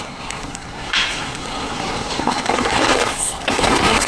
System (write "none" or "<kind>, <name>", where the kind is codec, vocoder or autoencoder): codec, SNAC